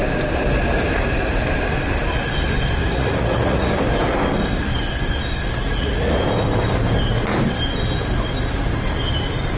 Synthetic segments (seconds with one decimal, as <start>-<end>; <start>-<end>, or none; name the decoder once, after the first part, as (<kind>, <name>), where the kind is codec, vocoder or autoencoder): 2.8-3.7 (vocoder, Vocos); 5.6-6.2